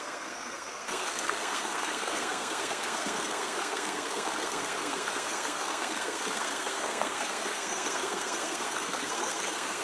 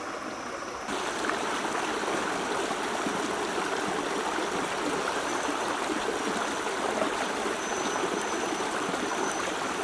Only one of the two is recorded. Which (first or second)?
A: second